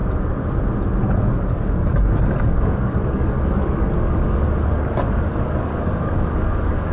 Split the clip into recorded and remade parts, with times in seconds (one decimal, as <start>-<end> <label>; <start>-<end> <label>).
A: 0.0-1.2 recorded; 1.2-6.9 remade